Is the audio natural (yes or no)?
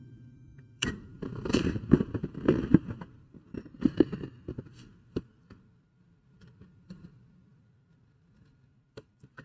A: no